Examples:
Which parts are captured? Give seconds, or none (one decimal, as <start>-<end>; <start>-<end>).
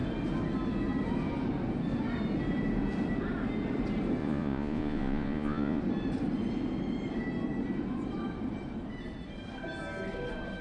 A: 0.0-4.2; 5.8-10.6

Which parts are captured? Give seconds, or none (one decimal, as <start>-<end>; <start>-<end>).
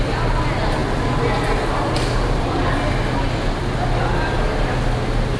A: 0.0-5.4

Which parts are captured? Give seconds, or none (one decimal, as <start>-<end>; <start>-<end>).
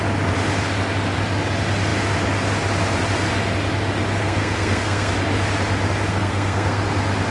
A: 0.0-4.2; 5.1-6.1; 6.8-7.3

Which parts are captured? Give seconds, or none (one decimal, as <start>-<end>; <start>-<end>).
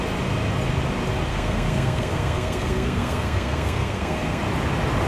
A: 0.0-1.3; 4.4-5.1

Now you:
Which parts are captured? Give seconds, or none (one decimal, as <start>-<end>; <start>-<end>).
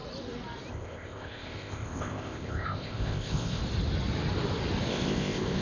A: 0.0-0.7; 3.6-4.9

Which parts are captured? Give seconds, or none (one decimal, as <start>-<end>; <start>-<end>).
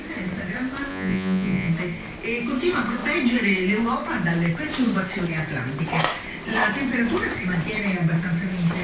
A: 0.0-0.9; 1.7-8.8